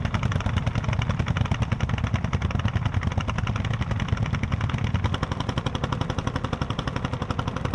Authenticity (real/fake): real